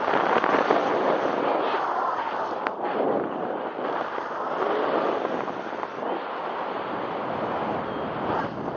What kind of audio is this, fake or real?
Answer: real